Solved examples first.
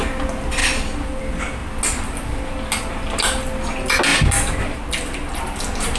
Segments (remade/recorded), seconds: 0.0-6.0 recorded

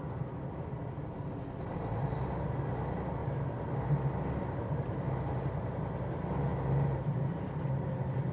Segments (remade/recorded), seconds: 0.0-8.3 recorded

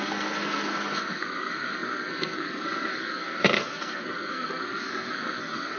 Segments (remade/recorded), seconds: 0.0-5.8 remade

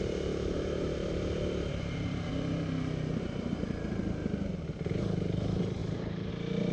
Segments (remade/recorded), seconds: 0.0-2.3 remade; 2.3-3.2 recorded; 3.2-4.2 remade; 4.2-5.0 recorded; 5.0-6.7 remade

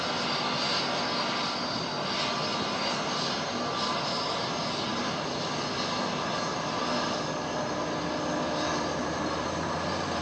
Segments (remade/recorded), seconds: 0.0-4.9 recorded; 4.9-5.5 remade; 5.5-9.0 recorded; 9.0-10.2 remade

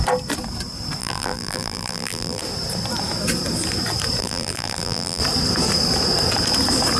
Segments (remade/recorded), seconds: 0.0-1.0 recorded; 1.0-2.4 remade; 2.4-4.2 recorded; 4.2-5.2 remade; 5.2-7.0 recorded

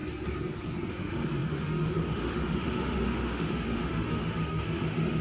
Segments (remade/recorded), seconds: 0.0-0.9 recorded; 0.9-5.2 remade